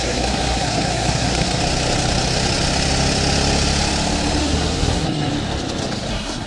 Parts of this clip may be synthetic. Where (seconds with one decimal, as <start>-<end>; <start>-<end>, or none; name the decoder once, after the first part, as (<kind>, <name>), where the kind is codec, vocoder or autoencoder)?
0.0-1.6 (codec, SNAC); 4.4-5.3; 6.1-6.5